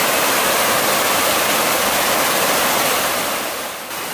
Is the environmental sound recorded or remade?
recorded